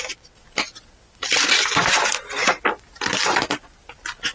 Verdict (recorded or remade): recorded